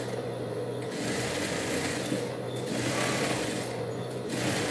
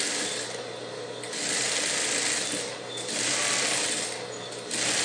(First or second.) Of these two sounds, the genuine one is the second